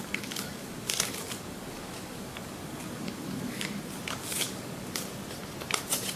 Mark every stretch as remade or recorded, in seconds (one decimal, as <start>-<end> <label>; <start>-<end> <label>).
0.0-3.7 remade; 3.7-4.2 recorded; 4.2-4.9 remade; 4.9-6.2 recorded